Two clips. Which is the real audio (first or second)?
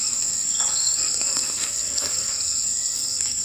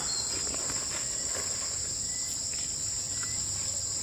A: second